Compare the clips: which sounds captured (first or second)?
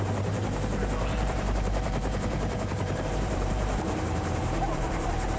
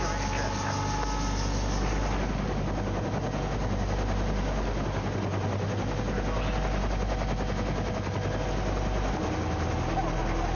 second